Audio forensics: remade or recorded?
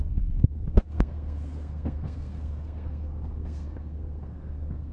remade